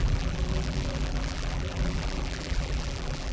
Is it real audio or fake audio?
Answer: fake